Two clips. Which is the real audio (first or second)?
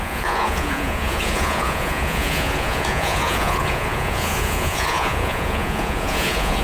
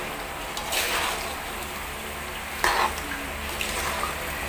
second